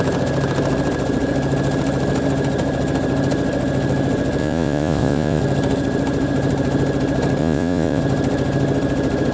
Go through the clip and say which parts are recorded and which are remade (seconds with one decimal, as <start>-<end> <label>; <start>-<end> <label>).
0.0-4.4 recorded; 4.4-5.4 remade; 5.4-7.4 recorded; 7.4-8.0 remade; 8.0-9.3 recorded

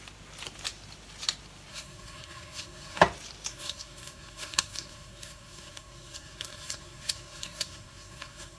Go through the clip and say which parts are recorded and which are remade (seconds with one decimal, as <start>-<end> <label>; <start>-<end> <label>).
0.0-1.7 recorded; 1.7-3.0 remade; 3.0-3.5 recorded; 3.5-8.6 remade

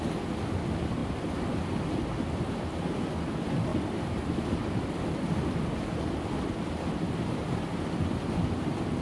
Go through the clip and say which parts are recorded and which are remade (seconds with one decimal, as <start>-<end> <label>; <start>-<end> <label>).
0.0-9.0 recorded

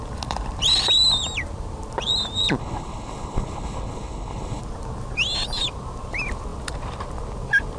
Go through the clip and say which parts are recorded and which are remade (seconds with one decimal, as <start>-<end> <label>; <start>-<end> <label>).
0.0-2.6 recorded; 2.6-4.6 remade; 4.6-7.8 recorded

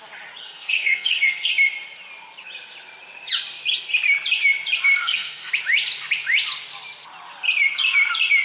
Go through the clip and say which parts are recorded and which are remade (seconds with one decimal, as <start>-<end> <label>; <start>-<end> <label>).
0.0-0.4 recorded; 0.4-1.5 remade; 1.5-5.0 recorded; 5.0-5.5 remade; 5.5-8.4 recorded

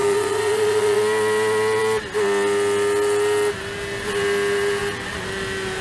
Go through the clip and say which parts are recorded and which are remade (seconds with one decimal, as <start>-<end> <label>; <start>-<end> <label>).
0.0-1.0 remade; 1.0-5.8 recorded

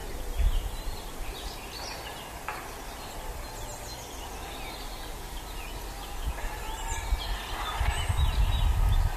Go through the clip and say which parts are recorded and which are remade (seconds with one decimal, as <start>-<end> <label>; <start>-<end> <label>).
0.0-1.9 remade; 1.9-9.2 recorded

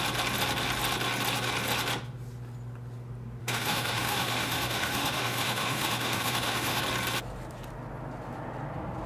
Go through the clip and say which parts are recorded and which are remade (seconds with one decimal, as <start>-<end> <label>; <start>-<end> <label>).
0.0-3.4 recorded; 3.4-6.8 remade; 6.8-9.1 recorded